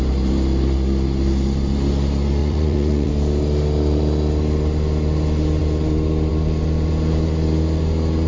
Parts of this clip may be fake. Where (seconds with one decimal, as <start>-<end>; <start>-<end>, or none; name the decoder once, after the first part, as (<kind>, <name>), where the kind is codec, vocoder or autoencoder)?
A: 2.4-3.1 (vocoder, Vocos)